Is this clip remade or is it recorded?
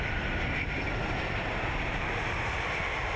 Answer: recorded